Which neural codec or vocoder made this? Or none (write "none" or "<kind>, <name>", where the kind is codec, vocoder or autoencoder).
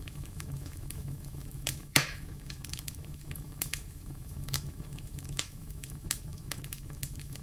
autoencoder, DAC-VAE